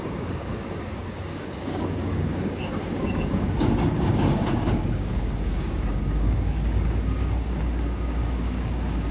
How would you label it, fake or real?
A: fake